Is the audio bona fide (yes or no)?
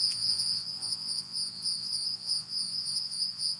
no